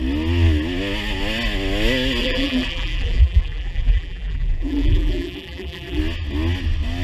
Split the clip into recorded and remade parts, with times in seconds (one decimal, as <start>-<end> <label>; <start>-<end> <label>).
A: 0.0-2.2 recorded; 2.2-6.0 remade; 6.0-7.0 recorded